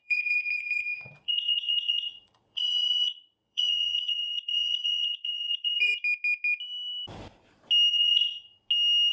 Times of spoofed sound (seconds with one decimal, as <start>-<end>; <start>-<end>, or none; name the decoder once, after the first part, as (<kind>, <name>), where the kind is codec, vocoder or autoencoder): 0.0-5.9 (vocoder, Vocos); 7.9-8.3